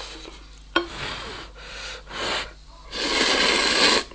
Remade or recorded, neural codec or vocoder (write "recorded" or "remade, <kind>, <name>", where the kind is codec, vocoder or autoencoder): recorded